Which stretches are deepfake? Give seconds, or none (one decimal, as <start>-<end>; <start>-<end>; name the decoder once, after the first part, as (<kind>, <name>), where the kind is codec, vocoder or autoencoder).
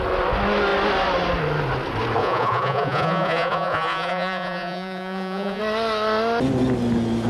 2.2-5.6 (vocoder, Vocos)